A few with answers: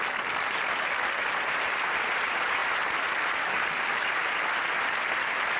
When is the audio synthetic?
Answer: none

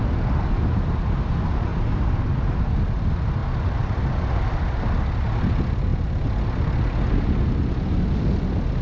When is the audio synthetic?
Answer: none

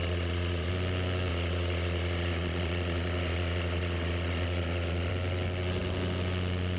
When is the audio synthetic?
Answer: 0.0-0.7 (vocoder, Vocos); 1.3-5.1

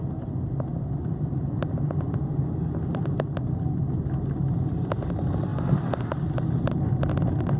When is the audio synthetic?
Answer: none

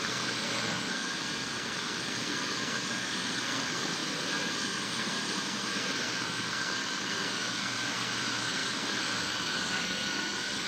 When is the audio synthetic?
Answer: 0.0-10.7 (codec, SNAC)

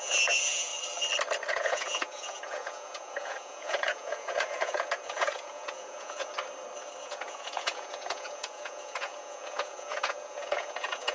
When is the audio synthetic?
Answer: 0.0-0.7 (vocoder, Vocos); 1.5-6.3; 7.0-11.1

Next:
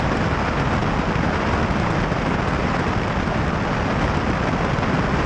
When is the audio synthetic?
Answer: none

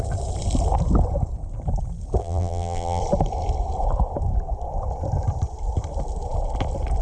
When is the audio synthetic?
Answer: 2.2-3.0 (vocoder, BigVGAN v2)